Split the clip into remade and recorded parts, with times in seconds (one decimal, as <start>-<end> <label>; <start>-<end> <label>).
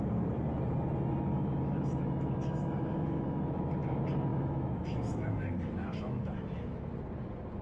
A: 0.0-1.3 recorded; 1.3-3.6 remade; 3.6-4.3 recorded; 4.3-6.9 remade; 6.9-7.6 recorded